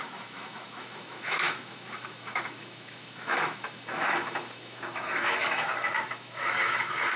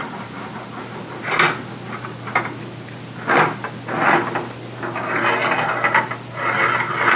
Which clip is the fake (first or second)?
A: first